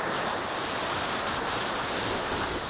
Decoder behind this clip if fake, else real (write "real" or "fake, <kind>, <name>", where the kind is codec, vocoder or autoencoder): real